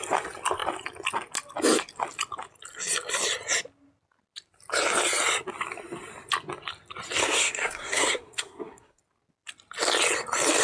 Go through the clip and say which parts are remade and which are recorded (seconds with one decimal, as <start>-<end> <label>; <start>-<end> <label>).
0.0-7.2 recorded; 7.2-9.0 remade; 9.0-10.6 recorded